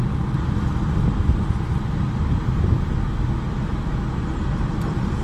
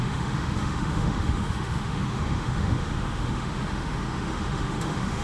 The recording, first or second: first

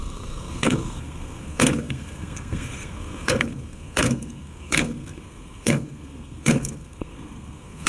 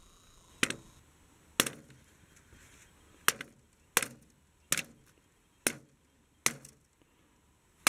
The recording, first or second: second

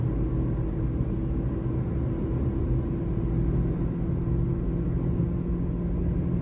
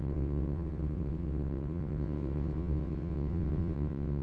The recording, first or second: first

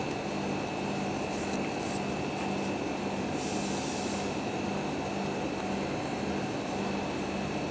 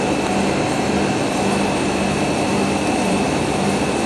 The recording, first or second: first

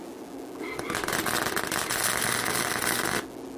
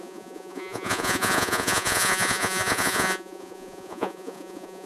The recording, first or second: first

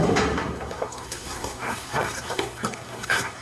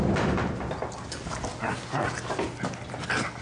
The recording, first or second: second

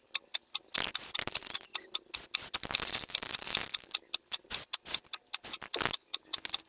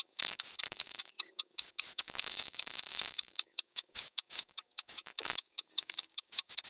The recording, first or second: first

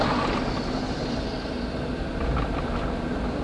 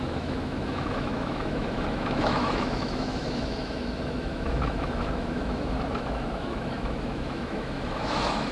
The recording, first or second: first